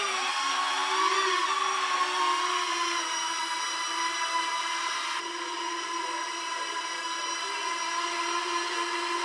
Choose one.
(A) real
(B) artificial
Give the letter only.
A